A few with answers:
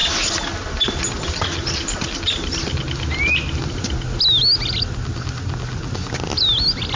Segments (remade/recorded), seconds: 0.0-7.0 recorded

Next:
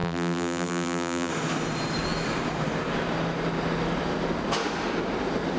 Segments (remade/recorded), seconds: 0.0-1.3 remade; 1.3-5.6 recorded

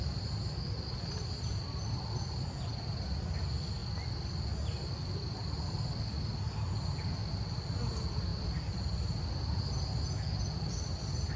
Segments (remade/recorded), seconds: 0.0-8.3 recorded; 8.3-9.2 remade; 9.2-11.4 recorded